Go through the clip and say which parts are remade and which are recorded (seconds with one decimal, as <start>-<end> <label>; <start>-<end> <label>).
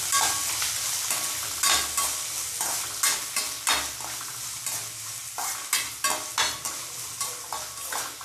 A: 0.0-8.2 recorded